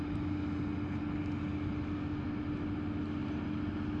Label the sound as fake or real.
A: real